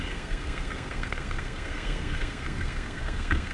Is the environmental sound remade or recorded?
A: remade